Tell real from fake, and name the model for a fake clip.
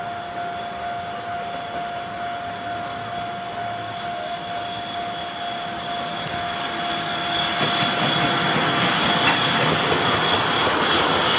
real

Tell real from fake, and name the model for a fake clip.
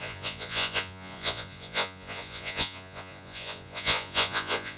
fake, vocoder, Vocos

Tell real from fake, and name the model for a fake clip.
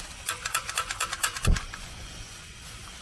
fake, vocoder, Vocos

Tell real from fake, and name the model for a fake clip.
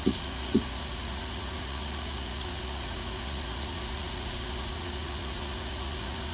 fake, vocoder, Vocos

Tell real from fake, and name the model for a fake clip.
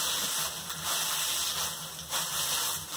real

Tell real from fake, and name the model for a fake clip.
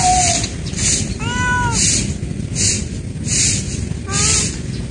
real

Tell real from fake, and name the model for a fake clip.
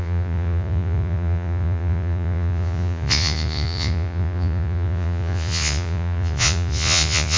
fake, vocoder, Vocos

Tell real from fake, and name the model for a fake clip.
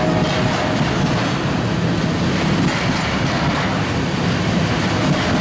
real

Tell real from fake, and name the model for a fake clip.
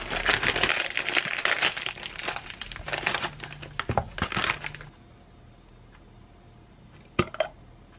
real